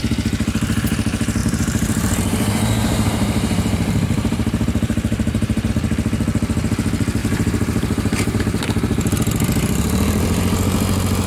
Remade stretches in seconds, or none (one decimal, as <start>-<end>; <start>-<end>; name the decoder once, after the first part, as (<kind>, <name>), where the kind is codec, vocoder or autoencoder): 1.4-5.7 (vocoder, BigVGAN v2); 7.2-8.4